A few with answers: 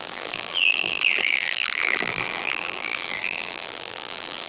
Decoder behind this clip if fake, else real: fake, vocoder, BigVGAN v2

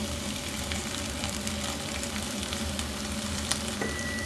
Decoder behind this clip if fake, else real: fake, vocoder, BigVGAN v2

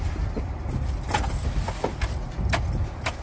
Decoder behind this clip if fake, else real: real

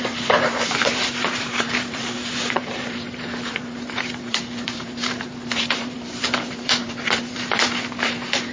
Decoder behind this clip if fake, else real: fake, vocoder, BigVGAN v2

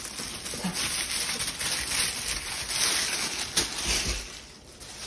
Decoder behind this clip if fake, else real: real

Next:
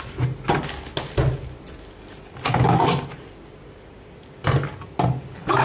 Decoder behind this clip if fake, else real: real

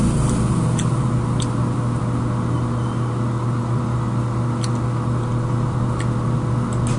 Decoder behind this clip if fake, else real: real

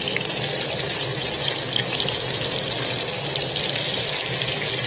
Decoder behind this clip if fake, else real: real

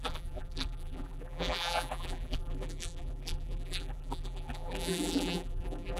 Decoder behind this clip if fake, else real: fake, vocoder, BigVGAN v2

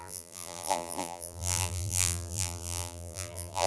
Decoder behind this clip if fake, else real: fake, vocoder, BigVGAN v2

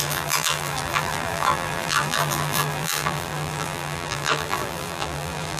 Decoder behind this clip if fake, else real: fake, vocoder, BigVGAN v2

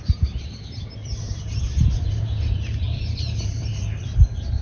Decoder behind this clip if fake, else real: fake, vocoder, BigVGAN v2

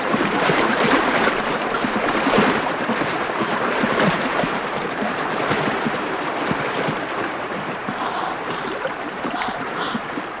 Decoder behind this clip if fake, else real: fake, vocoder, BigVGAN v2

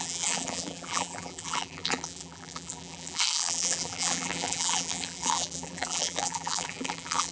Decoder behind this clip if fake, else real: fake, vocoder, BigVGAN v2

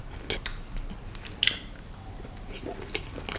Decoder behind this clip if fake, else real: real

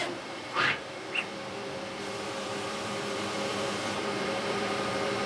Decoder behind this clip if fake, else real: fake, vocoder, BigVGAN v2